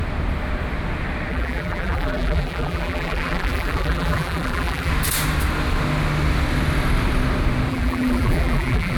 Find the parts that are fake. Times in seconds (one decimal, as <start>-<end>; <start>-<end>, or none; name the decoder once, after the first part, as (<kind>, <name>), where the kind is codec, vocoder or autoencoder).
1.3-4.9 (vocoder, BigVGAN v2); 7.7-9.0